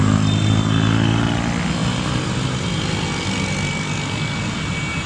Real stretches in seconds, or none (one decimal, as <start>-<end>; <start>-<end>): 0.0-5.1